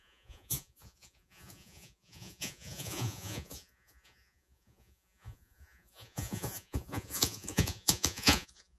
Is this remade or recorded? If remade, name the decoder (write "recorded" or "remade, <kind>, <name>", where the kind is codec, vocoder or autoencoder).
remade, vocoder, Vocos